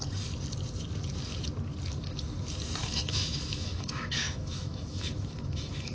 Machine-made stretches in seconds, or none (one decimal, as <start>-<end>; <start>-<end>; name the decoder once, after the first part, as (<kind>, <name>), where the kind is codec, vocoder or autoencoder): 2.8-5.9 (autoencoder, DAC-VAE)